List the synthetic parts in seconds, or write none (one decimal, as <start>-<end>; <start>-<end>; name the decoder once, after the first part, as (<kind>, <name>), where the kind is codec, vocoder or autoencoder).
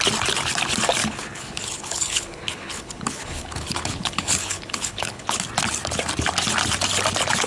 1.0-5.4 (codec, HILCodec)